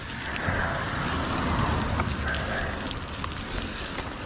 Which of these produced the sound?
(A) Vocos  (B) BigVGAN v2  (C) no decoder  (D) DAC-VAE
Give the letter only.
C